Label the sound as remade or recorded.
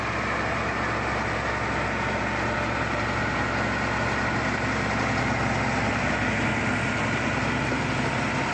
recorded